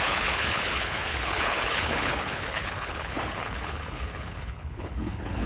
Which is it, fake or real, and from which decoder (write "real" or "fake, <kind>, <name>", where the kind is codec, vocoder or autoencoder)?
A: fake, codec, HILCodec